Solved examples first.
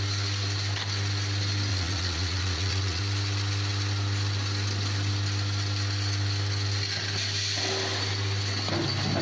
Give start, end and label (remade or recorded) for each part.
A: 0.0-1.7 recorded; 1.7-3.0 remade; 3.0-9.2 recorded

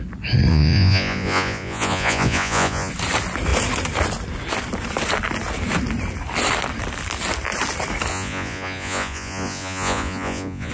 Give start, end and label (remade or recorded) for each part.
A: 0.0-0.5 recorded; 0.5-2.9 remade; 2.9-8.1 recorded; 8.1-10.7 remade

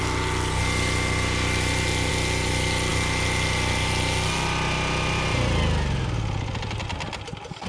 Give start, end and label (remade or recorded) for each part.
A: 0.0-7.7 recorded

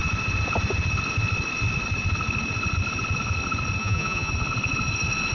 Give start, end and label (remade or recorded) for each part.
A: 0.0-3.8 recorded; 3.8-4.3 remade; 4.3-5.3 recorded